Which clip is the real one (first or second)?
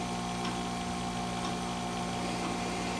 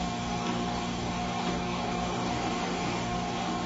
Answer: first